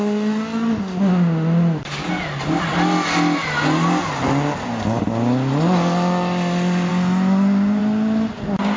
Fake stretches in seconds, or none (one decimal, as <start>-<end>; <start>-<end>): none